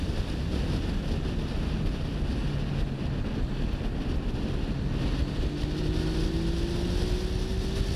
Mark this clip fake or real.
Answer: real